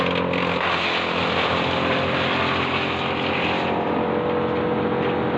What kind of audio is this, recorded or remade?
recorded